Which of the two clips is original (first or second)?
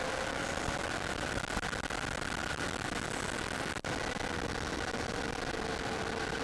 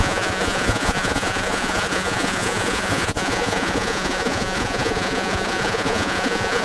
first